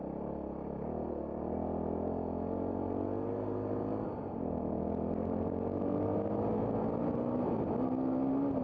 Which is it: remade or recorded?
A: recorded